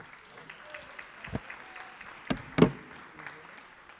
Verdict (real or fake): real